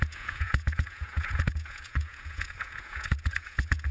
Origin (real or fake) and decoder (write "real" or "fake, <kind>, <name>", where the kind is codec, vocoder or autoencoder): fake, vocoder, Vocos